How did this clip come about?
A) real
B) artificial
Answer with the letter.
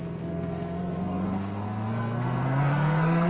B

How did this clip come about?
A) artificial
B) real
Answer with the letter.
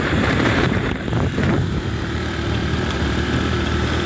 A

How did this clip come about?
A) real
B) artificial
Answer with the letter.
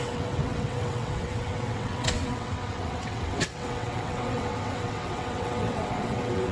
B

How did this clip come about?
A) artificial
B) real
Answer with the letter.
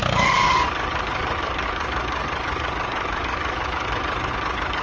A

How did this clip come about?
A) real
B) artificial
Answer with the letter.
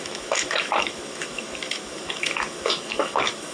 B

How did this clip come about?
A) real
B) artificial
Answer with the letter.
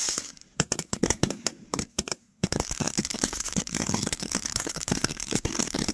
B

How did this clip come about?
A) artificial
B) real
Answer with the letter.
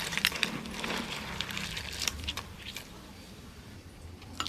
A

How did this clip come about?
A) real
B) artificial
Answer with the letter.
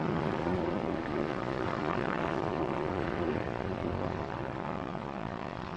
B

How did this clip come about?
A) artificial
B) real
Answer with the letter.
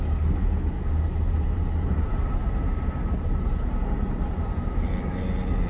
B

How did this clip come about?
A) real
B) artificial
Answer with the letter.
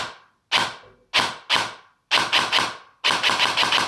A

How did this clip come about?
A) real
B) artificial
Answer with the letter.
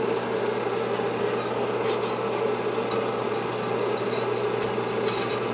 A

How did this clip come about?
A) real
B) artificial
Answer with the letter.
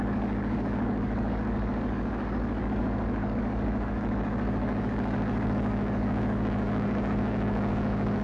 B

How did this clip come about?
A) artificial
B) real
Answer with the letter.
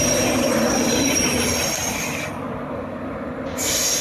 B